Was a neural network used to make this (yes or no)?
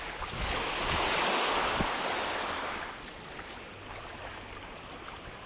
no